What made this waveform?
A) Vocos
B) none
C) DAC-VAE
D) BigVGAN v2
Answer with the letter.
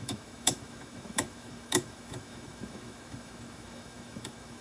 C